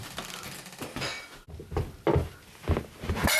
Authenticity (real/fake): real